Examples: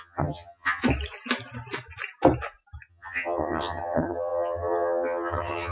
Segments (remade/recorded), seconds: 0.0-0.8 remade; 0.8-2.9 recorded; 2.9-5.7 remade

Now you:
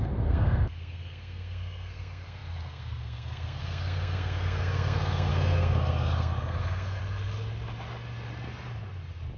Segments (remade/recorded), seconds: 0.0-7.0 remade; 7.0-9.4 recorded

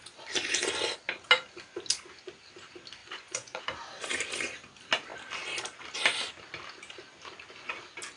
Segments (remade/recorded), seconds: 0.0-3.0 recorded; 3.0-3.6 remade; 3.6-8.2 recorded

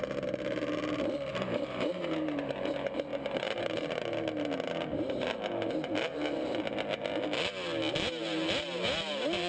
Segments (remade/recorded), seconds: 0.0-1.3 recorded; 1.3-2.5 remade; 2.5-3.1 recorded; 3.1-3.6 remade; 3.6-9.5 recorded

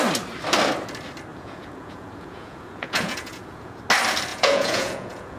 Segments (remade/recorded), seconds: 0.0-1.3 recorded; 1.3-3.8 remade; 3.8-4.3 recorded; 4.3-5.4 remade

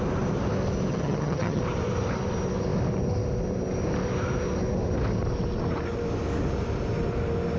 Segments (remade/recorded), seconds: 0.0-0.9 recorded; 0.9-1.6 remade; 1.6-7.6 recorded